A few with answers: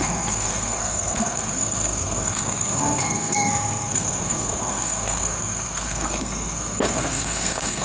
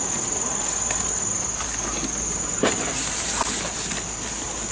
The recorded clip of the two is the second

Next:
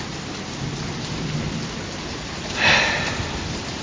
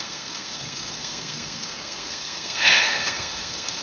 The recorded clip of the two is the first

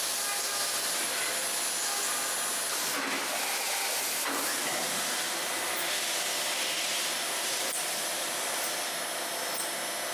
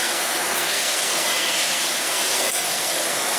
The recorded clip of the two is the first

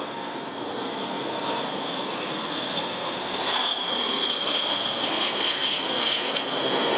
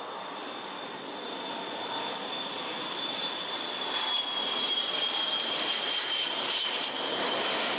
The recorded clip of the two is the second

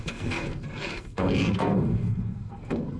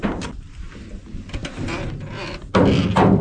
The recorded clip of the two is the second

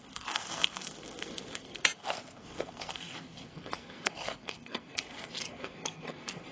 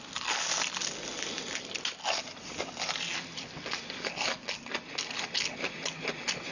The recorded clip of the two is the second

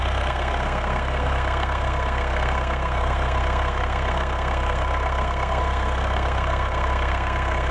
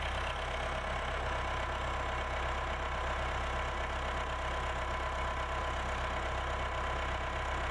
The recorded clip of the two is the second